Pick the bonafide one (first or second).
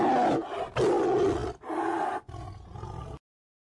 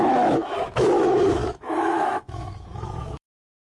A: first